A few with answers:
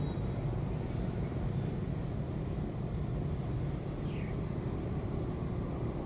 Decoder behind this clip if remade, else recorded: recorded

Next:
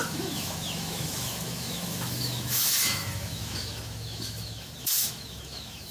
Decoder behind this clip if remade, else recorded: remade, autoencoder, DAC-VAE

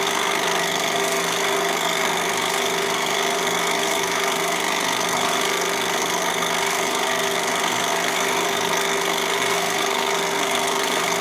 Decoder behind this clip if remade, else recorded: remade, codec, SNAC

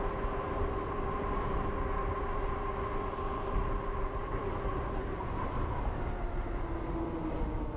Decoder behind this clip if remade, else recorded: recorded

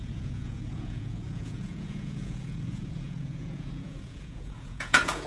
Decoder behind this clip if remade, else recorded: remade, vocoder, Vocos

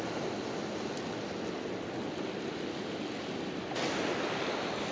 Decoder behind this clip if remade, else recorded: recorded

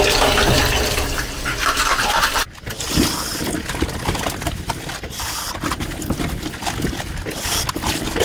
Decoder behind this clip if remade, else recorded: recorded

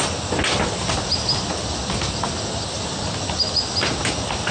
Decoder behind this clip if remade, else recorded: recorded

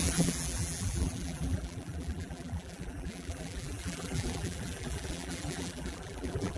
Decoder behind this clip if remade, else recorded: remade, vocoder, BigVGAN v2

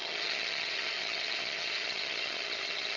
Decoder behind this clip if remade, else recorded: remade, vocoder, HiFi-GAN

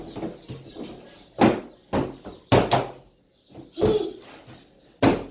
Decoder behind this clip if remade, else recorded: recorded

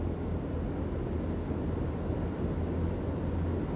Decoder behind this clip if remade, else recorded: recorded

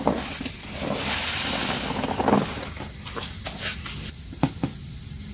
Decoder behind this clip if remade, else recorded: recorded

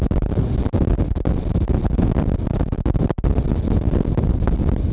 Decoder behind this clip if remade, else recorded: recorded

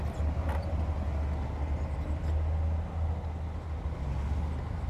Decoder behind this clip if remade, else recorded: recorded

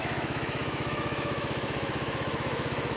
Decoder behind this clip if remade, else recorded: remade, autoencoder, DAC-VAE